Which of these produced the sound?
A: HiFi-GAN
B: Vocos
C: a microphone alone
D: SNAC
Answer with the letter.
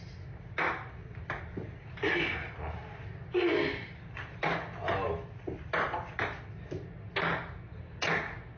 C